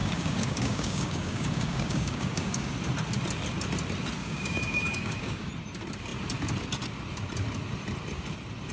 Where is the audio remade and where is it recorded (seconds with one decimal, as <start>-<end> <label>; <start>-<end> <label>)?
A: 0.0-2.7 remade; 2.7-4.2 recorded; 4.2-5.5 remade; 5.5-8.7 recorded